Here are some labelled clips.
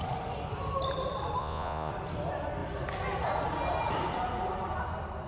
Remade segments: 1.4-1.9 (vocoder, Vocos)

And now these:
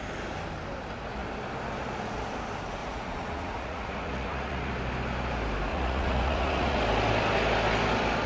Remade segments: 2.8-4.7 (vocoder, Vocos); 5.7-6.8

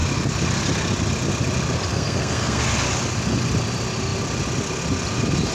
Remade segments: 1.9-2.6 (codec, SNAC)

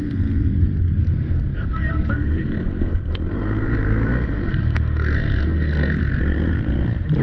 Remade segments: 0.0-6.2 (codec, SNAC)